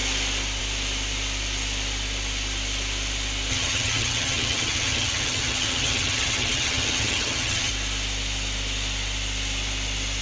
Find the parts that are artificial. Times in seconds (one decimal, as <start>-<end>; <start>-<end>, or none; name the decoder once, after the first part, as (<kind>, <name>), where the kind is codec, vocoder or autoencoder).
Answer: 3.5-7.7 (vocoder, HiFi-GAN)